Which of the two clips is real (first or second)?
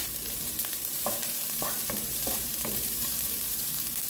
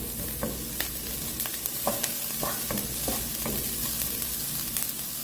second